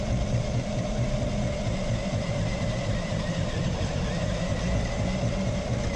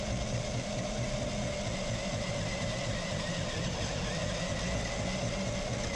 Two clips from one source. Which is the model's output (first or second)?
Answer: first